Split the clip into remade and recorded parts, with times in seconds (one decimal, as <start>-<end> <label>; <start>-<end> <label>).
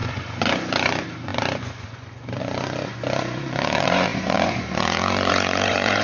0.0-6.0 remade